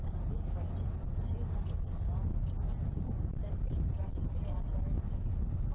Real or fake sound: real